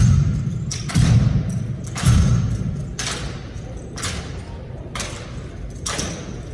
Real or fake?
real